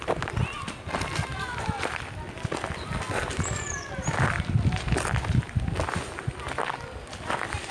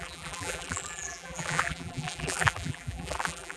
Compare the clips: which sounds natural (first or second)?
first